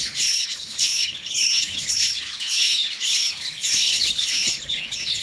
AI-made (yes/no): yes